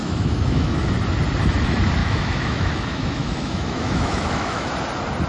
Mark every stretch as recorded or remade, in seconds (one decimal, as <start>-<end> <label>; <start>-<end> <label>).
0.0-0.9 remade; 0.9-2.0 recorded; 2.0-4.7 remade; 4.7-5.3 recorded